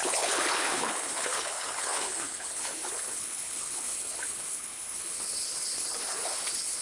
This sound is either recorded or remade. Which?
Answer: remade